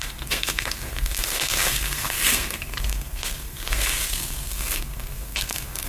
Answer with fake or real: fake